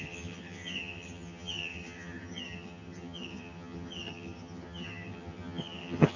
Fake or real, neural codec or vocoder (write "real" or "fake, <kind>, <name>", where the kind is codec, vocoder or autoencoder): fake, vocoder, HiFi-GAN